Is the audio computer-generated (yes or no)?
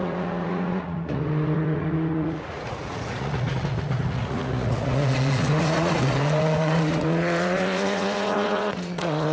yes